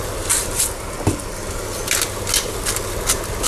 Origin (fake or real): real